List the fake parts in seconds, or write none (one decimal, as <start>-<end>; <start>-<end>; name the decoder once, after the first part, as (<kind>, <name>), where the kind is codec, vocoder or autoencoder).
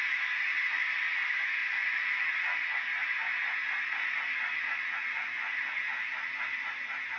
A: 1.6-2.2 (vocoder, Vocos)